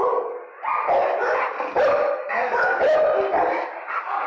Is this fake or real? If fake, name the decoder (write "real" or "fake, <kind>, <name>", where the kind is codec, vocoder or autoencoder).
real